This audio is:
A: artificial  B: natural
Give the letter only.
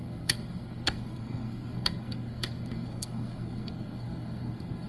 A